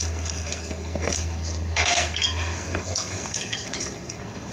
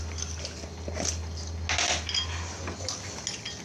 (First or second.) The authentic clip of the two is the second